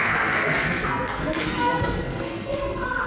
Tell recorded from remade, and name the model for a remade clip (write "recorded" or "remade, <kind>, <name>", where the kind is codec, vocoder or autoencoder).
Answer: remade, codec, SNAC